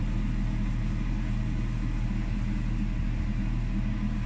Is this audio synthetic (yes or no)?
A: no